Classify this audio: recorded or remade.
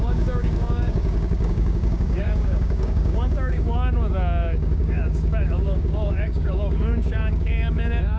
remade